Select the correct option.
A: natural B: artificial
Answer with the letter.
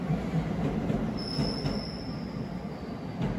A